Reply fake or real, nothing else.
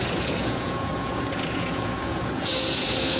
fake